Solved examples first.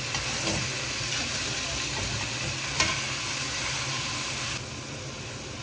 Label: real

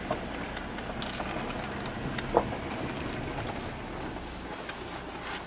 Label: real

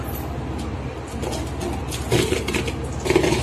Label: real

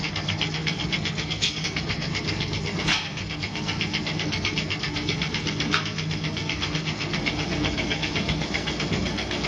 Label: fake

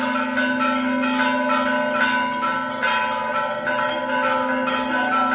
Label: real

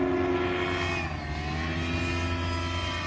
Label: real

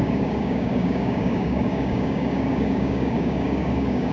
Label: fake